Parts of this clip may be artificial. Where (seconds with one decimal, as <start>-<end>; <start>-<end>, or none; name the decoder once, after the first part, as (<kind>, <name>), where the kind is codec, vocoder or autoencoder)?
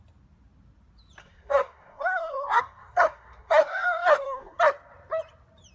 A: 1.2-4.6 (codec, SNAC)